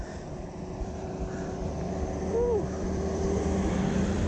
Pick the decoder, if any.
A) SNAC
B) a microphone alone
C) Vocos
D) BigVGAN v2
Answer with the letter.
D